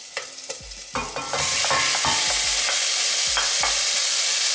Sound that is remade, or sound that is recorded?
recorded